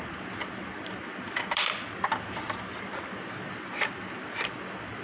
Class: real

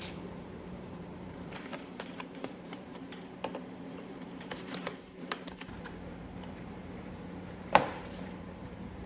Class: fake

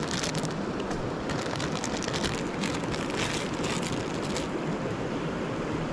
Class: real